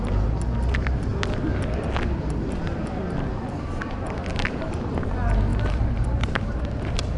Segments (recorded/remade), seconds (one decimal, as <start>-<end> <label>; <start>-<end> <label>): 0.0-4.3 recorded; 4.3-4.9 remade; 4.9-5.5 recorded; 5.5-6.6 remade; 6.6-7.2 recorded

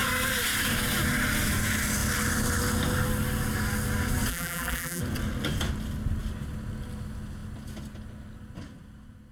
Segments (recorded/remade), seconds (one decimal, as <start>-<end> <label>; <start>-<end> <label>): 0.0-4.3 recorded; 4.3-5.0 remade; 5.0-9.3 recorded

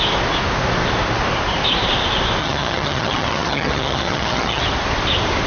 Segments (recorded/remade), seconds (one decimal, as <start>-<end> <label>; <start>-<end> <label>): 0.0-2.4 recorded; 2.4-4.6 remade; 4.6-5.5 recorded

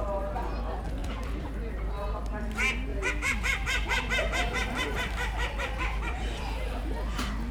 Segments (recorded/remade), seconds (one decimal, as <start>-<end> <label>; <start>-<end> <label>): 0.0-1.0 recorded; 1.0-2.0 remade; 2.0-2.9 recorded; 2.9-4.0 remade; 4.0-4.6 recorded; 4.6-6.8 remade; 6.8-7.5 recorded

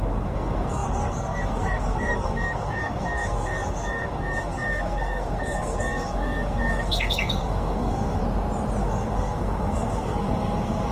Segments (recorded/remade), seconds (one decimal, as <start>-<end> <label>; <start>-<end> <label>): 0.0-8.2 remade; 8.2-8.8 recorded; 8.8-10.9 remade